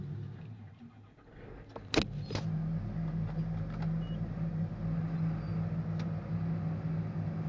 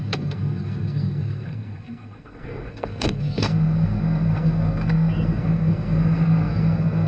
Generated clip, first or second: second